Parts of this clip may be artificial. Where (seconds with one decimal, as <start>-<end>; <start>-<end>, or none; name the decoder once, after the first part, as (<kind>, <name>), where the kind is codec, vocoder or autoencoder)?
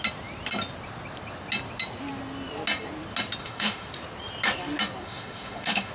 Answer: 3.4-3.9 (autoencoder, DAC-VAE); 5.0-5.9